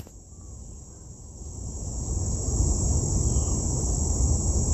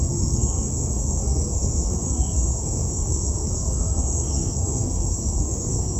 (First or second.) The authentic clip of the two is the first